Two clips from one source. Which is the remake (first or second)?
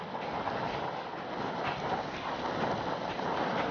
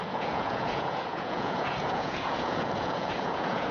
second